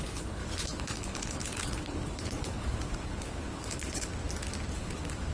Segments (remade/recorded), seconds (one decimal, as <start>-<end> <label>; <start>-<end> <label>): 0.0-4.1 remade; 4.1-4.7 recorded; 4.7-5.3 remade

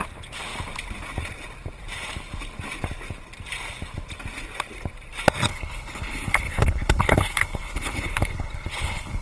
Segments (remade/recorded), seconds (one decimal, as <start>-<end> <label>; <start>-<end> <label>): 0.0-5.5 recorded; 5.5-9.2 remade

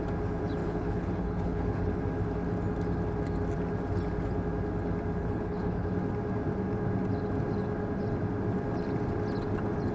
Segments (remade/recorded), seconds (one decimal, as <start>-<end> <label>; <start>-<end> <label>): 0.0-0.6 recorded; 0.6-1.9 remade; 1.9-5.2 recorded; 5.2-5.9 remade; 5.9-9.9 recorded

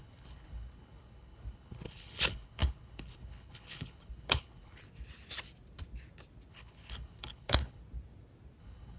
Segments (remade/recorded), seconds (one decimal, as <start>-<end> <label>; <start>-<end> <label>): 0.0-4.8 remade; 4.8-6.5 recorded; 6.5-7.8 remade; 7.8-8.6 recorded; 8.6-9.0 remade

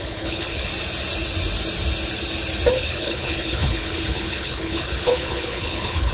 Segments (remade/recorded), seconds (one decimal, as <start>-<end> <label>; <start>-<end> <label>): 0.0-0.7 remade; 0.7-2.7 recorded; 2.7-6.1 remade

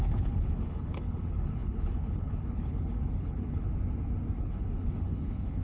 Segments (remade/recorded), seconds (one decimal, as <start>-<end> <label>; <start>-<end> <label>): 0.0-3.7 remade; 3.7-4.4 recorded; 4.4-5.6 remade